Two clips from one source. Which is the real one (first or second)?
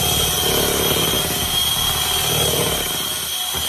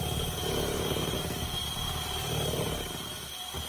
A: first